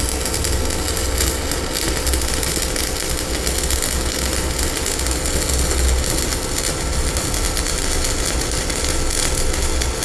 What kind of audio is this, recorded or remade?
recorded